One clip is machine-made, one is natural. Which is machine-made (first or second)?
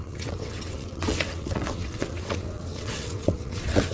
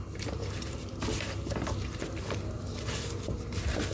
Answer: first